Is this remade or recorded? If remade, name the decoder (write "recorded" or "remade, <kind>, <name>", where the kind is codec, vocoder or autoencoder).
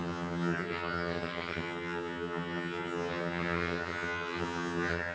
remade, vocoder, HiFi-GAN